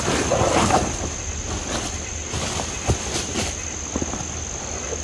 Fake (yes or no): no